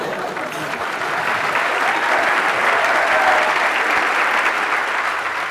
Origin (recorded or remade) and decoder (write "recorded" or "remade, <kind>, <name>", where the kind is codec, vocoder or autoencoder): recorded